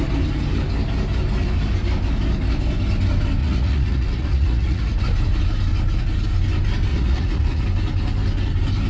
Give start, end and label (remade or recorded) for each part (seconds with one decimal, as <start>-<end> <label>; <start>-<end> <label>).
0.0-3.4 recorded; 3.4-5.0 remade; 5.0-6.9 recorded; 6.9-7.6 remade; 7.6-8.9 recorded